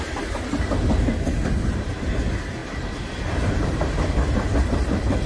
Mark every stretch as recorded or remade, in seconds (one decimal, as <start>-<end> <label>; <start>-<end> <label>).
0.0-5.3 recorded